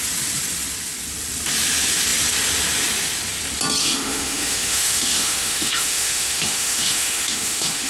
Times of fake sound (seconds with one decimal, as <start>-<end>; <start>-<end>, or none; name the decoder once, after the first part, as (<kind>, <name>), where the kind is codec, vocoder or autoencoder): 3.8-7.9 (autoencoder, DAC-VAE)